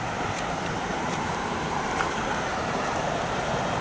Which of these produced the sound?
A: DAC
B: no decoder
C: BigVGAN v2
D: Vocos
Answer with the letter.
C